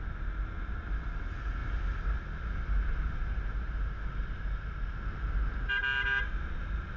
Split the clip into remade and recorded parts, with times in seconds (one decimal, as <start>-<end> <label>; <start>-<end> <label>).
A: 0.0-7.0 recorded

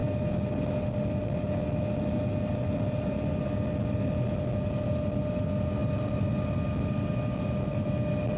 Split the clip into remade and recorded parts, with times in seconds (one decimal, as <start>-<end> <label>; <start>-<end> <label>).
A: 0.0-8.4 recorded